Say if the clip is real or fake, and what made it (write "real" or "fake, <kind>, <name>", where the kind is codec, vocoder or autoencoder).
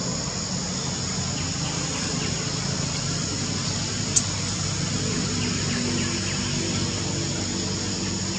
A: real